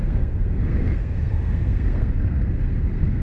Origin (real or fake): fake